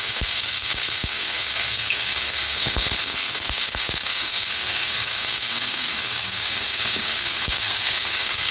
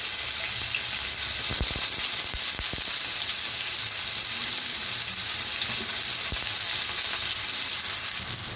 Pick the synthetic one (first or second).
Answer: first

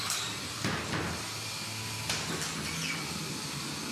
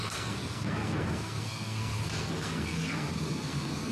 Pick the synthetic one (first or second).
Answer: second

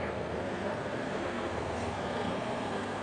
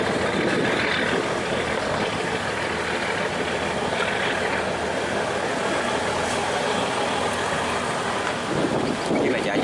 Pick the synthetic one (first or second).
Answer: first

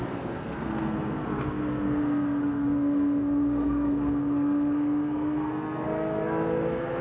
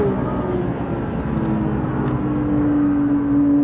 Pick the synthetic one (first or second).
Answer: first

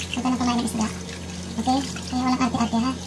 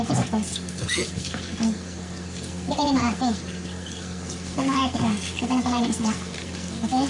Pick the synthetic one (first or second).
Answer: second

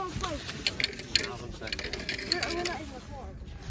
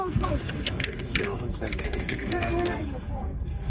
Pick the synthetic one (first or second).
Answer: second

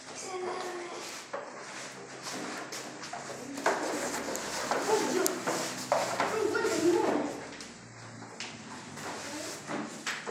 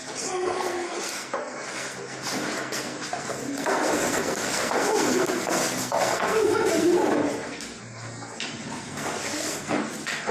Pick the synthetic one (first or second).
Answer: second